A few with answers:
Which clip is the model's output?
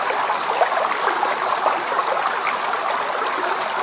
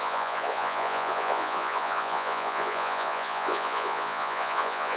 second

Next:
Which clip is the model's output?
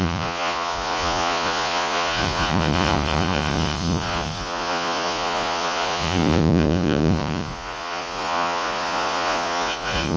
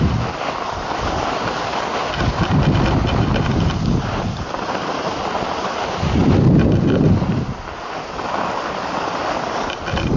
first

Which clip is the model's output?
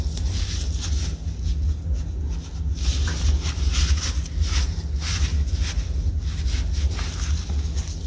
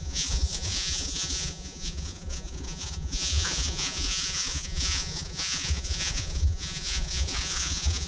second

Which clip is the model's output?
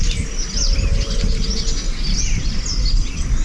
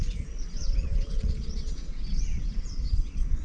second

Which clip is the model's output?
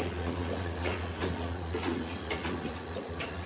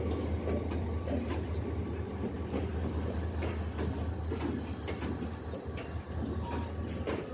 first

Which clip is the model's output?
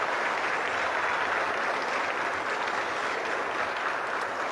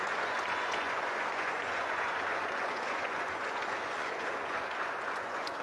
second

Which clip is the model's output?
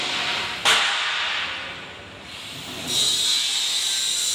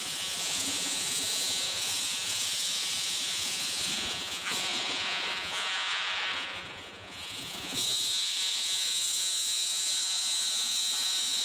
second